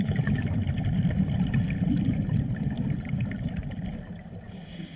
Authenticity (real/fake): real